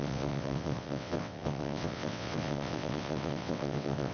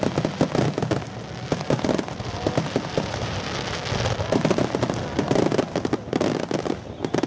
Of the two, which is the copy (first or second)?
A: first